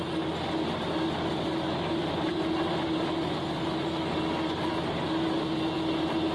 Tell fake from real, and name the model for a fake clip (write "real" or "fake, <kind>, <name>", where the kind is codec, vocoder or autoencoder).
real